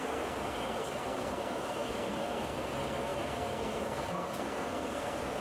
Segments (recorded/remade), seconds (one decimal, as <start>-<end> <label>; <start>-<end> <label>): 0.0-5.4 remade